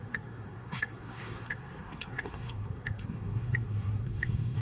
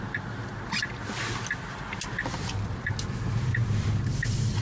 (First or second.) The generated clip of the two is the first